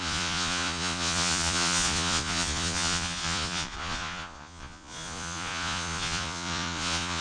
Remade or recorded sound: remade